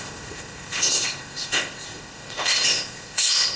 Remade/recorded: remade